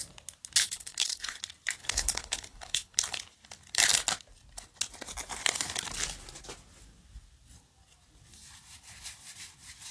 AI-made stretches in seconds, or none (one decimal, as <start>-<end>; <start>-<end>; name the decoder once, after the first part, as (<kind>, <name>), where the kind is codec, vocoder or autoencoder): 0.6-1.4 (codec, HILCodec); 1.8-3.2